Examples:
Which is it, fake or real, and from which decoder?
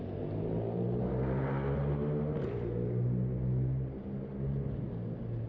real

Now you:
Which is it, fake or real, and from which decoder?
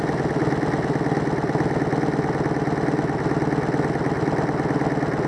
real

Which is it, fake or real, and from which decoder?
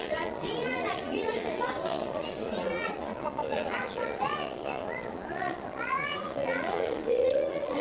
fake, vocoder, Vocos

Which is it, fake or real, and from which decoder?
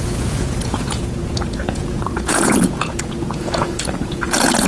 fake, vocoder, Vocos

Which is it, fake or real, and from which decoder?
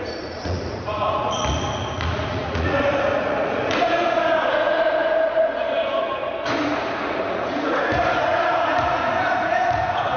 fake, vocoder, Vocos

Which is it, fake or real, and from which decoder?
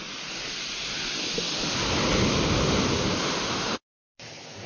real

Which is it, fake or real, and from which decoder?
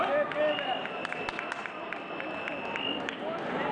real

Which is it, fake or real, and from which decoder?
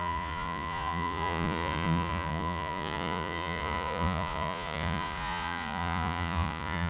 fake, vocoder, Vocos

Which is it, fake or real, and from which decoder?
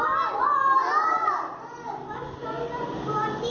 real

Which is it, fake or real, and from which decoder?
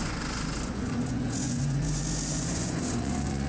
fake, vocoder, Vocos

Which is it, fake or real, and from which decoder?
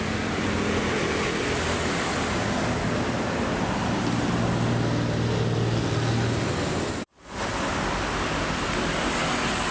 real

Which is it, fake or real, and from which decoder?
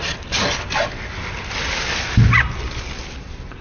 real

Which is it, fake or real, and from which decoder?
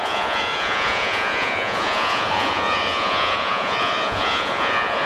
fake, vocoder, Vocos